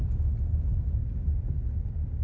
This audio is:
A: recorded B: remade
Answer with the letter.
A